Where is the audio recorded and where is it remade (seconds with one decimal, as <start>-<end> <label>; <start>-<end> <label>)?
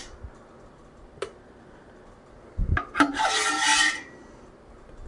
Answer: 0.0-3.1 recorded; 3.1-3.7 remade; 3.7-5.1 recorded